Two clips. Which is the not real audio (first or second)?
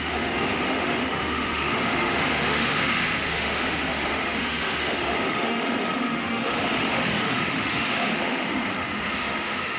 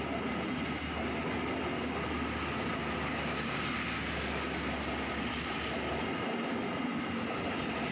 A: first